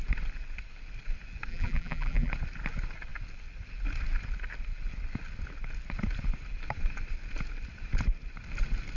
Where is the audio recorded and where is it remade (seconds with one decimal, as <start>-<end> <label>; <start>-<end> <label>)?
0.0-1.5 recorded; 1.5-2.3 remade; 2.3-9.0 recorded